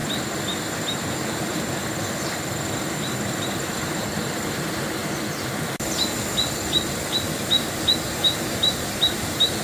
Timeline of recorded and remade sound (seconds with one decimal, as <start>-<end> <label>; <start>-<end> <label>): 0.0-0.7 recorded; 0.7-1.8 remade; 1.8-2.7 recorded; 2.7-5.0 remade; 5.0-8.1 recorded; 8.1-9.6 remade